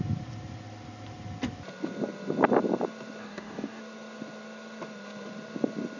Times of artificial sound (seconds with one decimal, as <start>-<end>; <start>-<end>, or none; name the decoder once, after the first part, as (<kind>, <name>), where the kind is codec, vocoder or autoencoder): 3.2-3.8 (codec, DAC)